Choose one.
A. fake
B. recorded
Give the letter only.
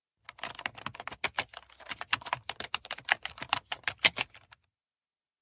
B